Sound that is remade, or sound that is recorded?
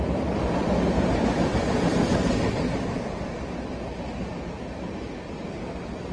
recorded